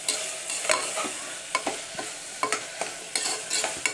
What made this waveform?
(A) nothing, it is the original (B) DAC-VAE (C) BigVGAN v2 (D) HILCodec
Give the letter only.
A